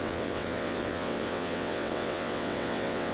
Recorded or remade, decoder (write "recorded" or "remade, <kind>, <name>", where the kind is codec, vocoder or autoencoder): remade, vocoder, WaveNeXt